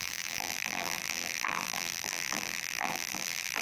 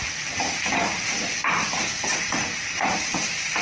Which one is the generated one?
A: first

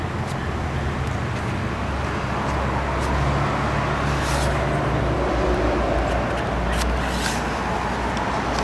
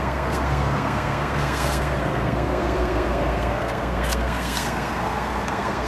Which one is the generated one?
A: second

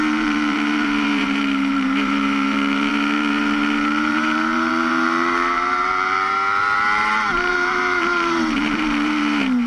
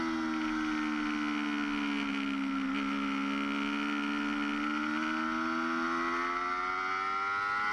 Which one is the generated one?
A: first